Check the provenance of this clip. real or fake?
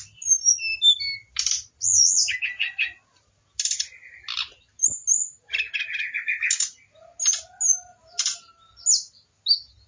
real